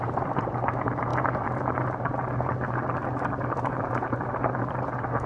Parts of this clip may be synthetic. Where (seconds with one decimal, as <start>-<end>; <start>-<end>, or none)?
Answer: 0.0-1.1; 3.8-5.3